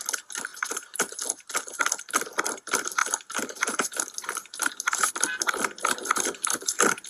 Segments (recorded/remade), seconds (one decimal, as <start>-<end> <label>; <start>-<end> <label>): 0.0-0.5 recorded; 0.5-1.2 remade; 1.2-3.0 recorded; 3.0-5.1 remade; 5.1-7.1 recorded